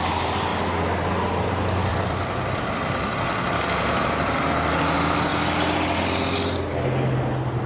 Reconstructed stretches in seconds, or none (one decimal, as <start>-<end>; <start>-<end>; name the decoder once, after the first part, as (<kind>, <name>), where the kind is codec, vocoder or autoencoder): 1.9-4.5 (vocoder, BigVGAN v2)